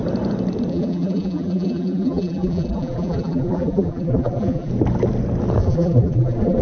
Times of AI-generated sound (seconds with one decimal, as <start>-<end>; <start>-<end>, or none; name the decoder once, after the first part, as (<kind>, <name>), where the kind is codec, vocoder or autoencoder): 0.7-4.7 (vocoder, BigVGAN v2); 5.6-6.6

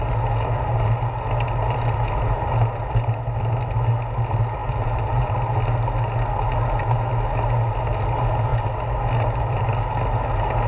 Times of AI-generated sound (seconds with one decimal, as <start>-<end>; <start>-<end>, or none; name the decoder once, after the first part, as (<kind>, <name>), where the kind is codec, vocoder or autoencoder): 4.6-5.3 (vocoder, BigVGAN v2)

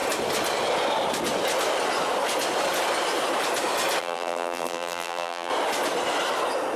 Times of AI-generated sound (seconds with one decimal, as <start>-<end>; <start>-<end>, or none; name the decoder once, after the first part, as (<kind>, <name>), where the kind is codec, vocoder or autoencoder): 4.0-5.5 (vocoder, BigVGAN v2)

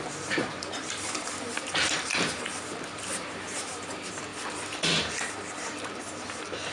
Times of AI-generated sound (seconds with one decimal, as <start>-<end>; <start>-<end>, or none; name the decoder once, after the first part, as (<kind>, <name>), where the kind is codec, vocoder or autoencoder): 0.0-4.3 (vocoder, BigVGAN v2); 4.8-6.7

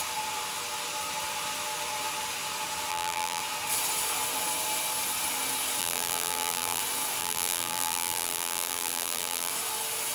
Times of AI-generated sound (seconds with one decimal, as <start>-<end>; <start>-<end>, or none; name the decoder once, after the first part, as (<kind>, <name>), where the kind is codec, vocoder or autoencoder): 2.9-3.4 (vocoder, BigVGAN v2); 5.8-6.8; 7.2-9.5